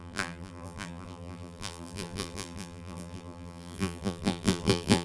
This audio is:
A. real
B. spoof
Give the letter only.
B